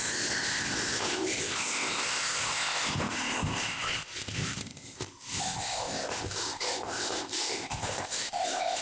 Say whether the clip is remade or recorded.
remade